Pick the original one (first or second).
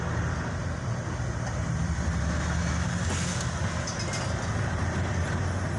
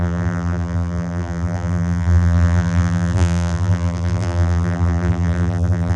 first